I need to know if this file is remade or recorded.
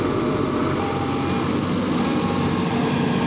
recorded